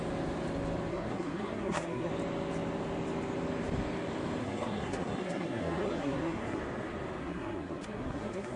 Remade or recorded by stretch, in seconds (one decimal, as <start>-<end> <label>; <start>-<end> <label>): 0.0-0.9 recorded; 0.9-2.1 remade; 2.1-4.4 recorded; 4.4-6.6 remade; 6.6-7.2 recorded; 7.2-8.6 remade